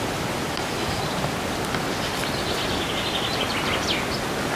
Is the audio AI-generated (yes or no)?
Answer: no